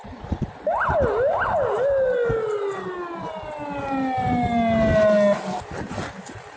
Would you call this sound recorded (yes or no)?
yes